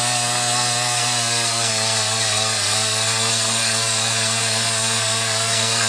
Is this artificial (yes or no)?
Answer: yes